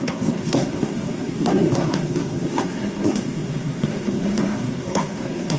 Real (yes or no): no